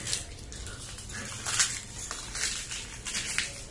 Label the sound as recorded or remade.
recorded